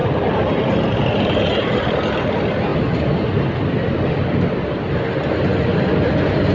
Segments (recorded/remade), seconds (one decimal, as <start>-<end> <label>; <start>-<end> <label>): 0.0-6.5 recorded

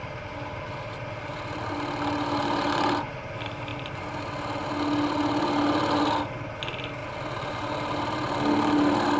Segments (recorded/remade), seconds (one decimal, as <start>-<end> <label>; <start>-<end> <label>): 0.0-9.2 recorded

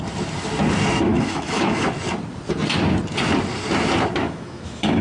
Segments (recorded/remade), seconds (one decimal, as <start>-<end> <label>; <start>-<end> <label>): 0.0-1.1 recorded; 1.1-1.8 remade; 1.8-4.2 recorded; 4.2-5.0 remade

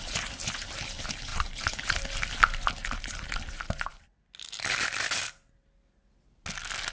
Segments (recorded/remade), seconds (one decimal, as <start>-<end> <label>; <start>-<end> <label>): 0.0-6.9 recorded

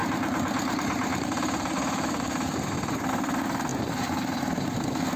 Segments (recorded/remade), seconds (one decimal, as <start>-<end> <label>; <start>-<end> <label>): 0.0-3.1 remade; 3.1-3.7 recorded; 3.7-4.4 remade; 4.4-5.2 recorded